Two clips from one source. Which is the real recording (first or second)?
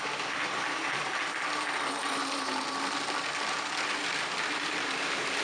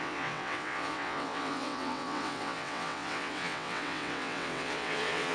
first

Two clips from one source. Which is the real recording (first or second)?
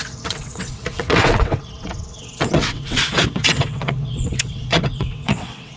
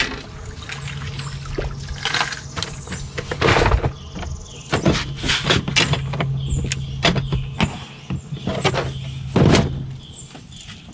second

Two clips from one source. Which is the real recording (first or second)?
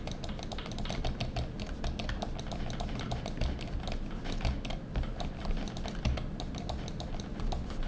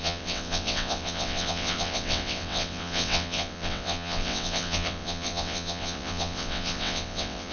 first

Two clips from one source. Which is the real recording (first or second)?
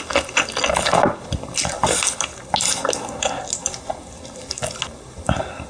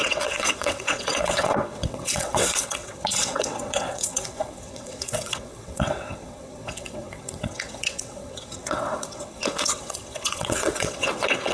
first